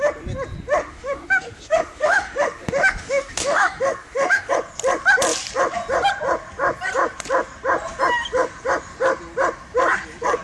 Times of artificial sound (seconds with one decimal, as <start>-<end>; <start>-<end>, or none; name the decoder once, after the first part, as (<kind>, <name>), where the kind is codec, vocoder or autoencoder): 0.8-4.5 (autoencoder, DAC-VAE)